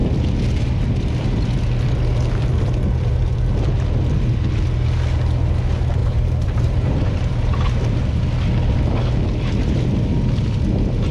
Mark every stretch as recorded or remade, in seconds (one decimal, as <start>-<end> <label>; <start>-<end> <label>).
0.0-6.0 recorded; 6.0-8.2 remade; 8.2-11.1 recorded